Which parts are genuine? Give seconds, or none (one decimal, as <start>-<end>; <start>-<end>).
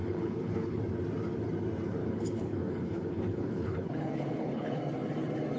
0.8-2.0; 4.8-5.6